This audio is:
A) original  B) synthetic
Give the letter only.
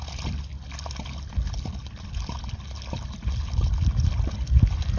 A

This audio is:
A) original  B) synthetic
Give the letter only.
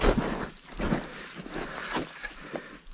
A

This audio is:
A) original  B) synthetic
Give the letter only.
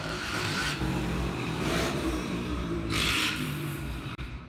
B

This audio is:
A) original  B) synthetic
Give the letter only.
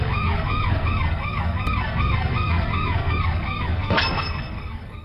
B